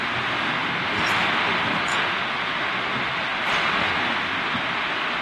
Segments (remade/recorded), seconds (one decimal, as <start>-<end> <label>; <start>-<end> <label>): 0.0-1.9 recorded; 1.9-2.6 remade; 2.6-5.2 recorded